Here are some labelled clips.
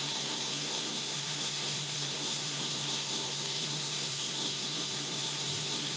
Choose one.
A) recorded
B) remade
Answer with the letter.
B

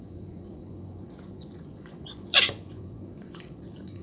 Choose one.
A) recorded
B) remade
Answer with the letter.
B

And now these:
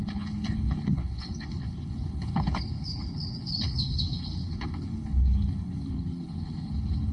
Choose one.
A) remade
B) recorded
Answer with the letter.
A